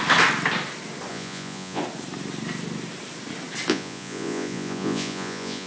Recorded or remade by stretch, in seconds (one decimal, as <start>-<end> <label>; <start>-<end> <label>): 0.0-1.1 recorded; 1.1-1.8 remade; 1.8-3.7 recorded; 3.7-5.7 remade